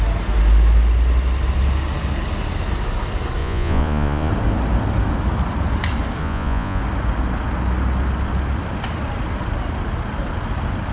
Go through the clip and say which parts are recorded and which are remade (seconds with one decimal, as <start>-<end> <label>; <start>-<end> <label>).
0.0-3.4 recorded; 3.4-4.3 remade; 4.3-6.2 recorded; 6.2-6.8 remade; 6.8-10.9 recorded